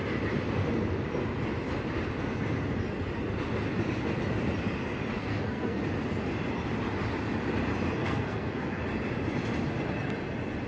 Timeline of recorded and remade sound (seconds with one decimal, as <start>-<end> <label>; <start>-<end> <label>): 0.0-5.2 recorded; 5.2-5.8 remade; 5.8-8.0 recorded; 8.0-8.8 remade; 8.8-10.7 recorded